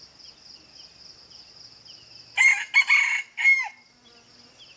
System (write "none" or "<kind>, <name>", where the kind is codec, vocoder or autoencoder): none